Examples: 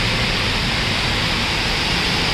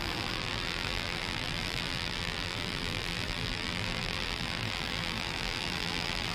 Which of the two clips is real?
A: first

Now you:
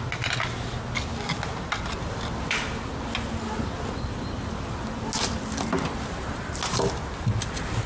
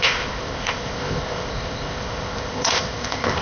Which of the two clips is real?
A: first